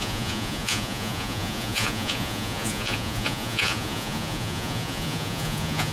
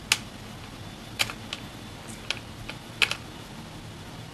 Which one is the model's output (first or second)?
first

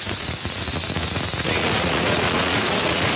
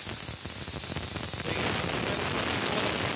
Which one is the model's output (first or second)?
first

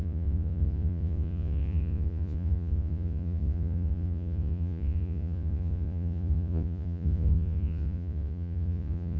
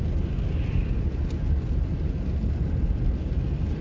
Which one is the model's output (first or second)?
first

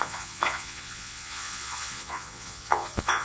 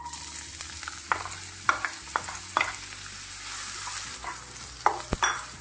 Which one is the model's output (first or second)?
first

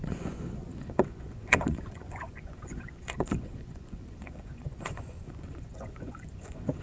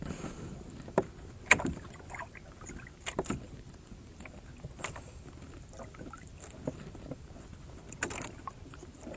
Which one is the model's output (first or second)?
first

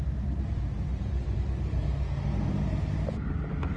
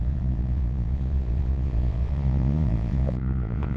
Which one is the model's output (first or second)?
second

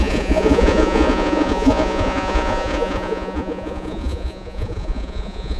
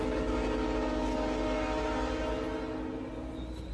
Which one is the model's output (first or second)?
first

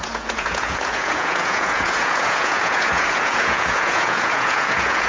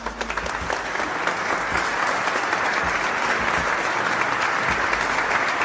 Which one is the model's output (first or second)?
first